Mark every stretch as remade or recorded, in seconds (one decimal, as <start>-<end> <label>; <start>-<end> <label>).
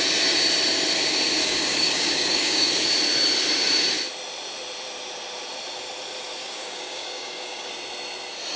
0.0-1.4 recorded; 1.4-2.7 remade; 2.7-6.4 recorded; 6.4-7.7 remade; 7.7-8.6 recorded